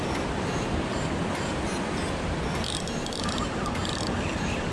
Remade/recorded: recorded